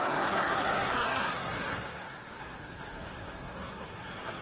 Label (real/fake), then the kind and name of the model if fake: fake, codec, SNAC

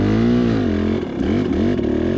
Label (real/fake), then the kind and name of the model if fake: real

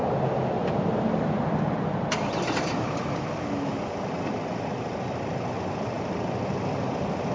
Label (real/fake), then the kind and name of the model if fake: real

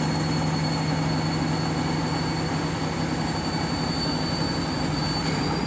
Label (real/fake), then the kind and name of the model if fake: fake, vocoder, BigVGAN v2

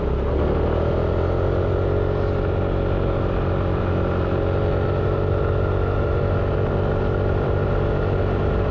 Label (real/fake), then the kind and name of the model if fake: real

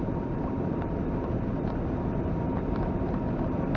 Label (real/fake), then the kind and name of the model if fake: fake, vocoder, BigVGAN v2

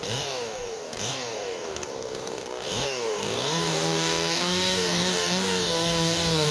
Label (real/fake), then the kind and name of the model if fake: fake, codec, DAC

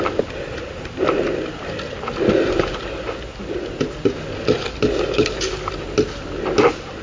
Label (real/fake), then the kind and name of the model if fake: real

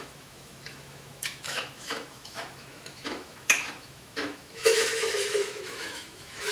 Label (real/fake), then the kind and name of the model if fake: fake, autoencoder, DAC-VAE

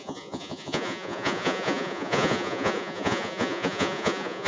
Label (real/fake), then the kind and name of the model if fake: fake, vocoder, Vocos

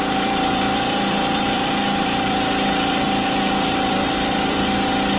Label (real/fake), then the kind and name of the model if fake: fake, vocoder, BigVGAN v2